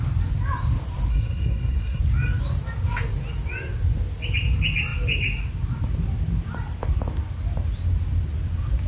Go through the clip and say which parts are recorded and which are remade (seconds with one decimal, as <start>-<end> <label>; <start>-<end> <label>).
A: 0.0-1.1 recorded; 1.1-2.0 remade; 2.0-8.9 recorded